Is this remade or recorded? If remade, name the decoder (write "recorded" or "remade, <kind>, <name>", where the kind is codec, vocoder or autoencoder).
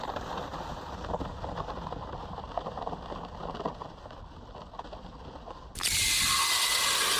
recorded